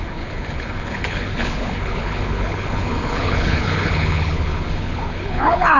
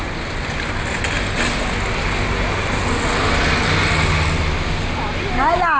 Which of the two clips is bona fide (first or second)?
second